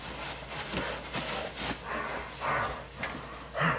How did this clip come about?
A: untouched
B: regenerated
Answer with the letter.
A